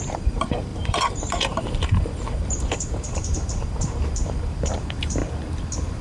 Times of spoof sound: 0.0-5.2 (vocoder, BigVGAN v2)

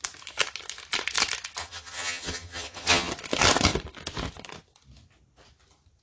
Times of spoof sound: 1.6-3.1 (vocoder, HiFi-GAN)

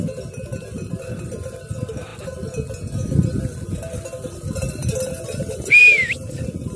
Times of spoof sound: none

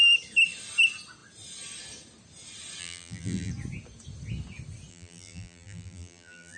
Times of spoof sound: 2.8-3.5 (vocoder, BigVGAN v2); 4.9-6.6